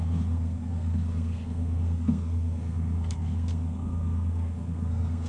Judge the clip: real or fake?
fake